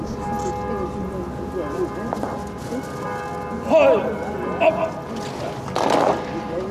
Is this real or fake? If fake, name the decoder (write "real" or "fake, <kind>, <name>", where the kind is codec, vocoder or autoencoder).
real